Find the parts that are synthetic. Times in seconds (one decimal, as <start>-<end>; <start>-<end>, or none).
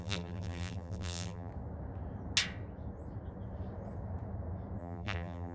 0.0-1.5; 4.8-5.5